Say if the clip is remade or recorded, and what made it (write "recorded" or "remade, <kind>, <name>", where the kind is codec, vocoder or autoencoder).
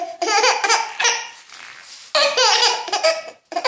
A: recorded